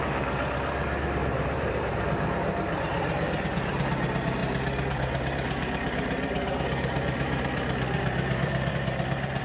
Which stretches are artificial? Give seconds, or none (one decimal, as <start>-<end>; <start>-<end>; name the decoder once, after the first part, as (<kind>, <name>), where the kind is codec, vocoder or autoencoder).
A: 0.0-2.9 (vocoder, BigVGAN v2); 3.7-9.4